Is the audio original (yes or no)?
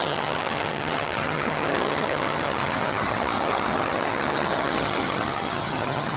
no